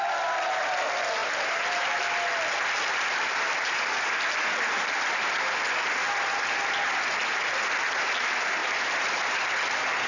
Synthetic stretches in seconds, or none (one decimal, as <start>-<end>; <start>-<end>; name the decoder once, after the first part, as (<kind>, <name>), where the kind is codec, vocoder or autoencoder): none